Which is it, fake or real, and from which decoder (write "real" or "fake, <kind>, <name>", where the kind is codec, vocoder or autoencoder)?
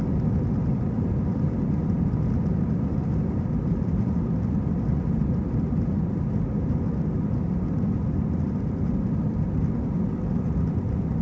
real